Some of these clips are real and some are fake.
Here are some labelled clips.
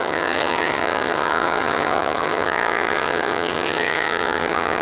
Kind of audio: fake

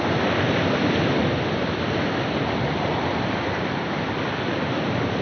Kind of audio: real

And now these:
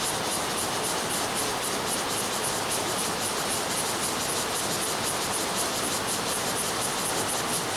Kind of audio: real